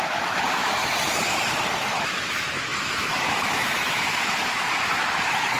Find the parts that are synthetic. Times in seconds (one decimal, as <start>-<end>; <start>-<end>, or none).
0.0-0.8; 2.0-5.6